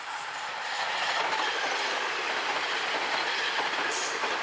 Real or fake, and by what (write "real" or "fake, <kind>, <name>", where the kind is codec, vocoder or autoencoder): real